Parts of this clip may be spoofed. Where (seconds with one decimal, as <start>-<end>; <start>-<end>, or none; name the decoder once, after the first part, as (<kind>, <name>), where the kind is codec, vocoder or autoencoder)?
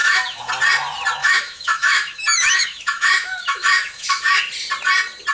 0.0-0.5 (autoencoder, DAC-VAE); 1.2-4.4